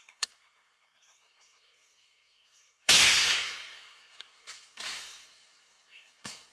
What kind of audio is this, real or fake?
fake